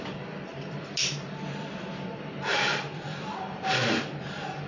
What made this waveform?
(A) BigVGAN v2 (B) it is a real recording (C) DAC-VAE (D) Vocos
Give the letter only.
A